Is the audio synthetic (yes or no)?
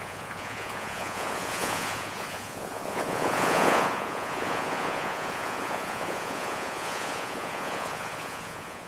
yes